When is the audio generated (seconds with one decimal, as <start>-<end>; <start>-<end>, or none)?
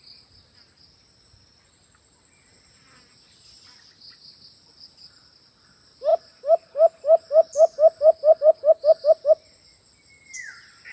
none